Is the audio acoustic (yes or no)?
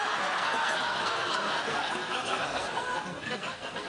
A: no